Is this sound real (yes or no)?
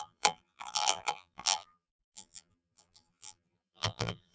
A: no